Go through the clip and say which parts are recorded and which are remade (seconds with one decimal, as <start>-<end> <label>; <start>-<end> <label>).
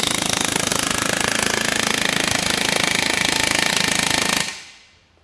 0.0-5.2 recorded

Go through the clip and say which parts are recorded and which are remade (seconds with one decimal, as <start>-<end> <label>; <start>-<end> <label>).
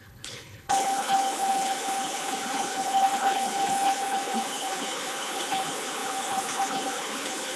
0.0-7.6 remade